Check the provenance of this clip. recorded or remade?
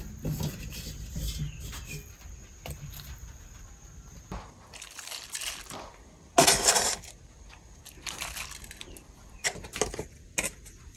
recorded